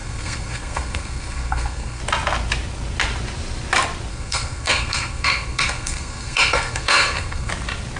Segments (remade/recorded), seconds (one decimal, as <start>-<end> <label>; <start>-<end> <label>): 0.0-2.0 remade; 2.0-4.1 recorded; 4.1-7.5 remade; 7.5-8.0 recorded